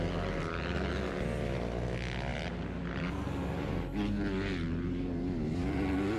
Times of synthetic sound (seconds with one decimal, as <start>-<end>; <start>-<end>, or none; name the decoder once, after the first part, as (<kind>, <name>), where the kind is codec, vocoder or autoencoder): none